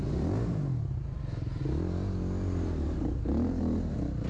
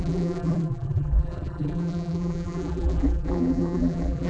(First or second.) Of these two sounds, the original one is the first